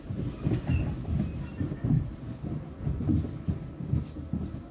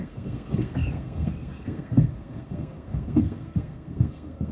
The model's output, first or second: second